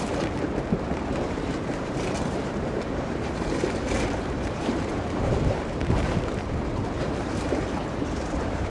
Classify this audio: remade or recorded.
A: remade